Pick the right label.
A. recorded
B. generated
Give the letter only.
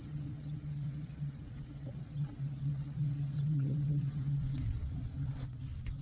B